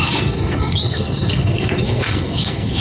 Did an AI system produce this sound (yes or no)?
yes